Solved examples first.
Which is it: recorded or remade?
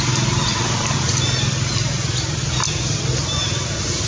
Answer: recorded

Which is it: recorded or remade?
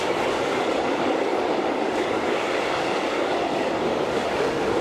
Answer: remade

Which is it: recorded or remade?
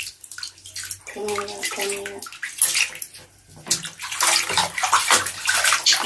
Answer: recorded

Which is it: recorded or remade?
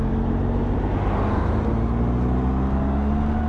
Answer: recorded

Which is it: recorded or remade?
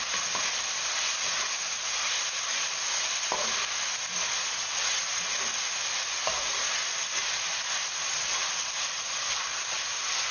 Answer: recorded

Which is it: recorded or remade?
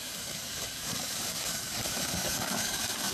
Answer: remade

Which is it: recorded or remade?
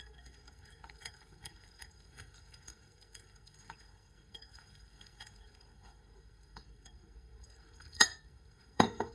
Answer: remade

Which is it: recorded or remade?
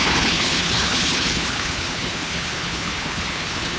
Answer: remade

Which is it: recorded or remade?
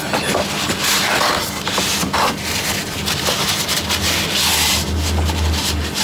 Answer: recorded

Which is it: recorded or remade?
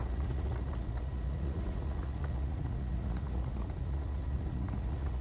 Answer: remade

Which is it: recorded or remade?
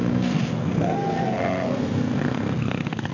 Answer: remade